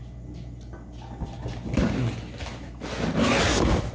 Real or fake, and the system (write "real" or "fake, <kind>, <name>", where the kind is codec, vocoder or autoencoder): real